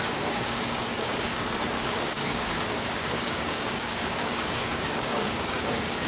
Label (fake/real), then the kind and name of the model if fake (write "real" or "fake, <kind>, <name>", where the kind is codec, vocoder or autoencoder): fake, codec, DAC